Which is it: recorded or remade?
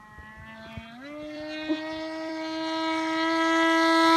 recorded